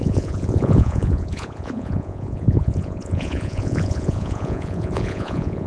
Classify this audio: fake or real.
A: fake